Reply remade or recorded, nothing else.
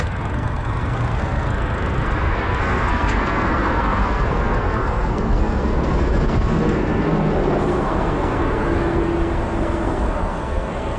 remade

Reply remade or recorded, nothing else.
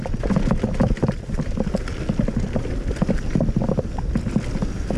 recorded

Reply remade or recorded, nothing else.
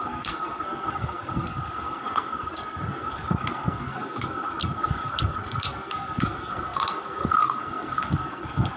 remade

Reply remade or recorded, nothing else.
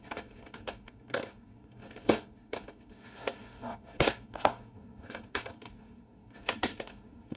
remade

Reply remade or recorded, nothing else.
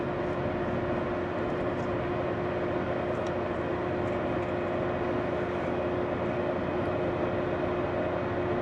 recorded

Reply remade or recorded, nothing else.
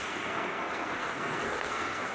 remade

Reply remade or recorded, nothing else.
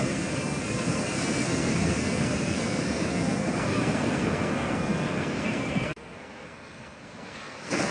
remade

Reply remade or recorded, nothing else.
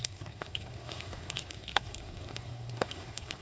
remade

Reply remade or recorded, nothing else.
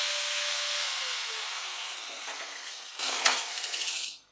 remade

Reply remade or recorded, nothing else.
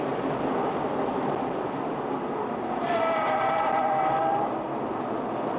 recorded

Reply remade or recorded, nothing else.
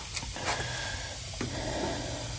recorded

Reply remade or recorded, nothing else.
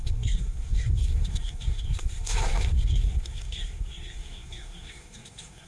remade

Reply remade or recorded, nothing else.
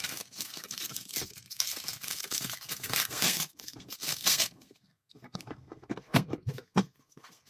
remade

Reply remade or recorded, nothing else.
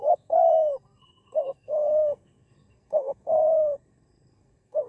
remade